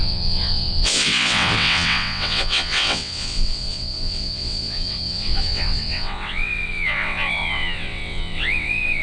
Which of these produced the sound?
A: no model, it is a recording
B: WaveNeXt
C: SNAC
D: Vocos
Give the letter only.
B